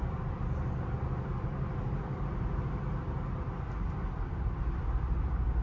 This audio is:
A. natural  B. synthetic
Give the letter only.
B